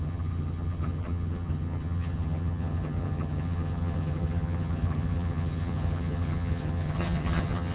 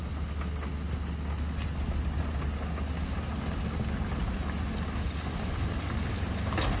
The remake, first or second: first